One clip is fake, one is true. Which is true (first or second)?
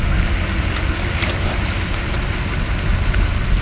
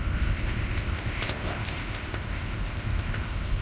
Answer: first